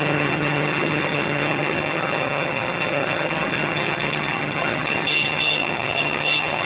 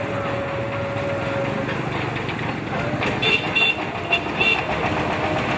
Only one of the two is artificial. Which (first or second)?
first